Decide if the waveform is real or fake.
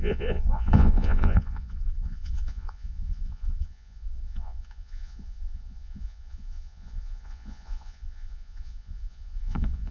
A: fake